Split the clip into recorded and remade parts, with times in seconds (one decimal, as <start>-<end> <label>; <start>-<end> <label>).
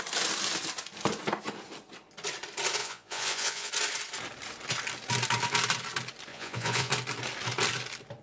0.0-2.8 recorded; 2.8-3.7 remade; 3.7-6.3 recorded; 6.3-6.9 remade; 6.9-8.2 recorded